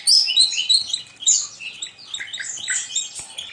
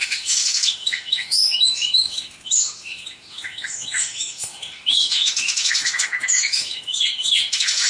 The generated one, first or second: second